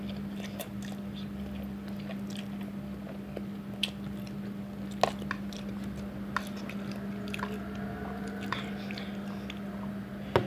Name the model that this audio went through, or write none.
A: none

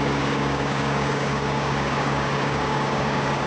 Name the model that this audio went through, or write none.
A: codec, DAC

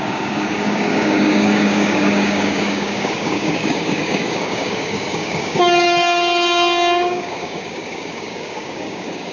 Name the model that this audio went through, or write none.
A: codec, DAC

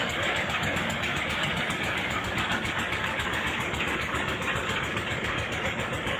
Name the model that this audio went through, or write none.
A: codec, DAC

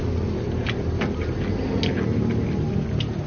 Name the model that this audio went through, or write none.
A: none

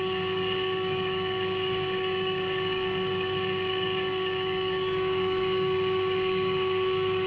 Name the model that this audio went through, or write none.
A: codec, DAC